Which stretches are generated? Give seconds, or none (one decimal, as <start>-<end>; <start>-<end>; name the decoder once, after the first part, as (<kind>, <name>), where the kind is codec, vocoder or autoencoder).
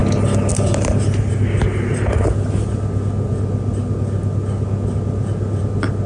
none